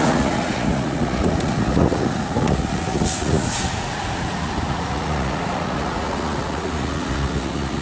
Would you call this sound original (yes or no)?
no